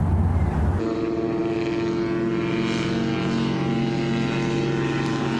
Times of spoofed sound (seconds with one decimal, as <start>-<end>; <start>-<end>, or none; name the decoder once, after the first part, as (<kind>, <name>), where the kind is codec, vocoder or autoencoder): none